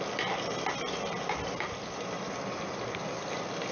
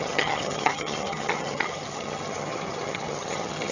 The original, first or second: first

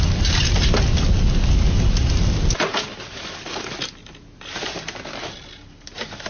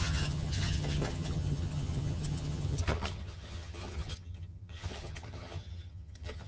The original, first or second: first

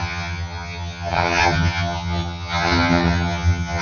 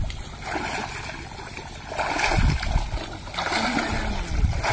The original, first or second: second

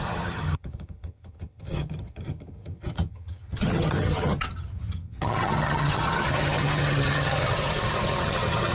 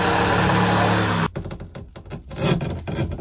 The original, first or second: second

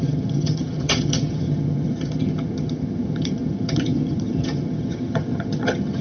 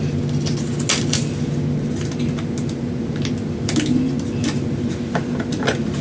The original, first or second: second